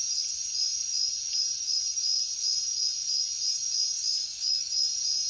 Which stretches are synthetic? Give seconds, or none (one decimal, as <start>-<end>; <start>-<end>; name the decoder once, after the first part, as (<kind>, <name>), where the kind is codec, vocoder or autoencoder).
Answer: 4.2-4.7 (codec, DAC)